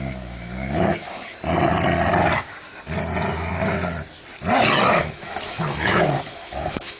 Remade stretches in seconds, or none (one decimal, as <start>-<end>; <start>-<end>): 0.0-1.4; 5.0-7.0